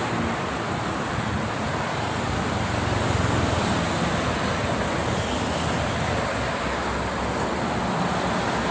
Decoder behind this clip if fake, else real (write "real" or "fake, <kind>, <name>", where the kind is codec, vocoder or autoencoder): real